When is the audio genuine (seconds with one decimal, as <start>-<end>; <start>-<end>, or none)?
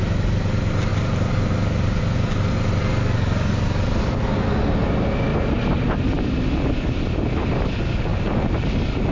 0.0-0.9; 2.0-5.3; 6.2-8.1